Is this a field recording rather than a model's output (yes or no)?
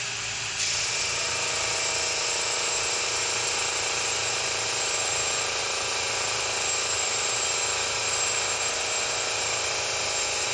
no